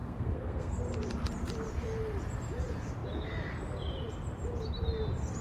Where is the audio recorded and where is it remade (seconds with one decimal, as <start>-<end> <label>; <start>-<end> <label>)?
0.0-0.8 remade; 0.8-5.4 recorded